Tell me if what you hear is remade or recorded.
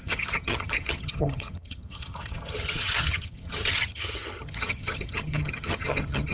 remade